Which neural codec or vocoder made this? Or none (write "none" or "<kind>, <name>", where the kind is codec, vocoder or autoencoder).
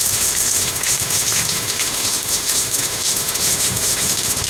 autoencoder, DAC-VAE